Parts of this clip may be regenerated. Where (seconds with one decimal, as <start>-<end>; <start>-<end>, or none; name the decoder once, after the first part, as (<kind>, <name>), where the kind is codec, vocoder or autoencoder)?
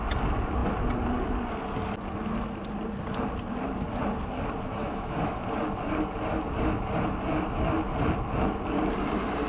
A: 4.8-5.4 (autoencoder, DAC-VAE)